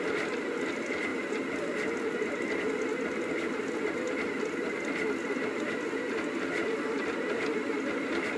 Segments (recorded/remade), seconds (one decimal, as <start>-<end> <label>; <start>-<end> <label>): 0.0-8.4 recorded